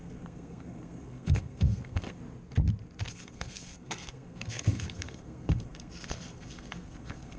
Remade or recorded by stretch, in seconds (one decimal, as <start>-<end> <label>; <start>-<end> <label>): 0.0-2.2 remade; 2.2-3.1 recorded; 3.1-7.4 remade